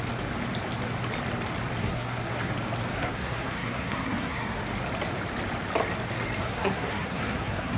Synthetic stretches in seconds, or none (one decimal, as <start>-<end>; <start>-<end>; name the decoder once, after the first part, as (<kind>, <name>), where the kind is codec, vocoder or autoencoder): 1.8-2.5 (codec, SNAC); 2.9-4.6; 6.4-7.8